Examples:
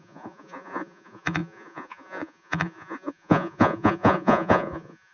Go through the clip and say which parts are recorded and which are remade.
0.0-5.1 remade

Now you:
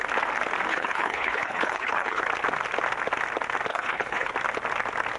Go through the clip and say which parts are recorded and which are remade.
0.0-0.7 recorded; 0.7-2.2 remade; 2.2-3.7 recorded; 3.7-4.3 remade; 4.3-5.2 recorded